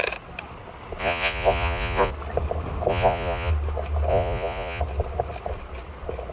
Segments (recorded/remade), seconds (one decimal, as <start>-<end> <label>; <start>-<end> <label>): 0.0-1.0 recorded; 1.0-2.1 remade; 2.1-2.9 recorded; 2.9-3.5 remade; 3.5-4.1 recorded; 4.1-4.8 remade; 4.8-6.3 recorded